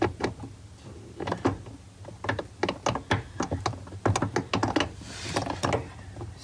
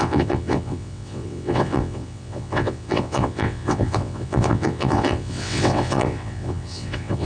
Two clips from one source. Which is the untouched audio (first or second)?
first